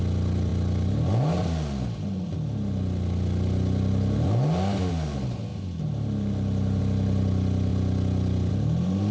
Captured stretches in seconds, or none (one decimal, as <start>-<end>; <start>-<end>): 0.0-9.1